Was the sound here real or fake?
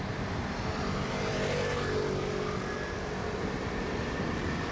real